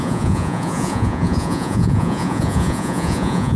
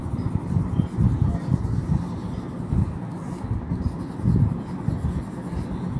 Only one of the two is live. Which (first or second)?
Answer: second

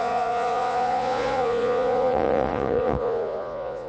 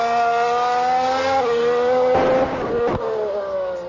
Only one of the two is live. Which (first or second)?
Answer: second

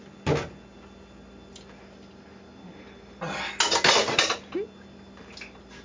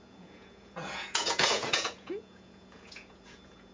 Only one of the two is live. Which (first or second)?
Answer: first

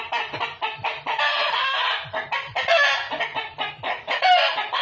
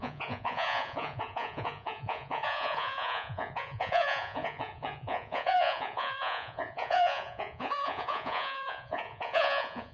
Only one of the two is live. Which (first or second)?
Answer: first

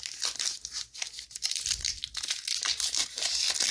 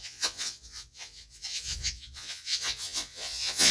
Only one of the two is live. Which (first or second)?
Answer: first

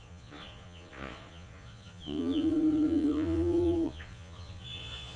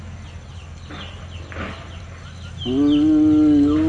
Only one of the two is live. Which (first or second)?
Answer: second